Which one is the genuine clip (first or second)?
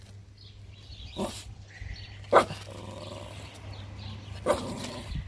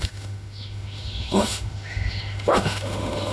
first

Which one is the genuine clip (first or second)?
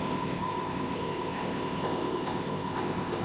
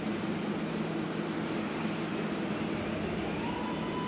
second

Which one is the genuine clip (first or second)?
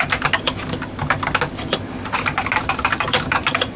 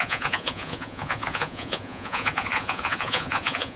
first